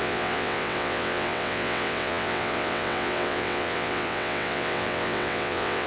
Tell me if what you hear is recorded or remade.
remade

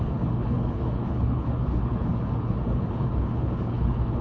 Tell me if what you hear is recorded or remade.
remade